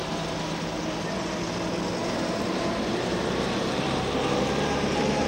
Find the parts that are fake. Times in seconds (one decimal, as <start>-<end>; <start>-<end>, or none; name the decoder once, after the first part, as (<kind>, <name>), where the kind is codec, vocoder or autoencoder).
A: 2.0-5.3 (vocoder, BigVGAN v2)